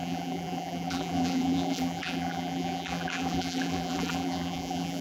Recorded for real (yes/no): no